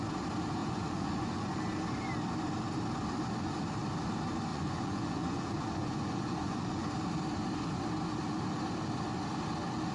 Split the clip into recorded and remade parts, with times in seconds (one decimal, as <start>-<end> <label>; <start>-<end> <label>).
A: 0.0-0.6 recorded; 0.6-1.5 remade; 1.5-4.5 recorded; 4.5-6.9 remade; 6.9-9.9 recorded